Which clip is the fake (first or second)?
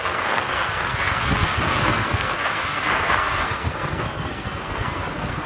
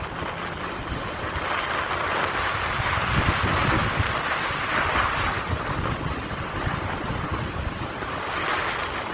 first